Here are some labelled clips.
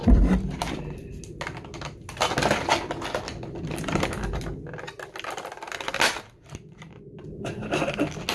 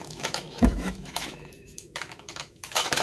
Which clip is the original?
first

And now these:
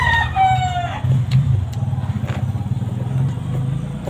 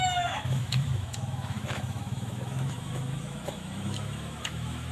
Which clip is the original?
first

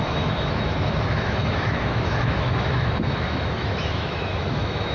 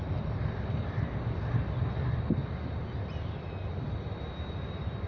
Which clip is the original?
second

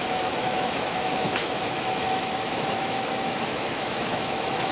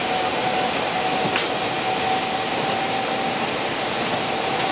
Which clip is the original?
second